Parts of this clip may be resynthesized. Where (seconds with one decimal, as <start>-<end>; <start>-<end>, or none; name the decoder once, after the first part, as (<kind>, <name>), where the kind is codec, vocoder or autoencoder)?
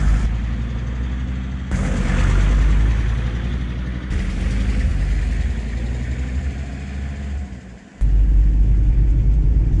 none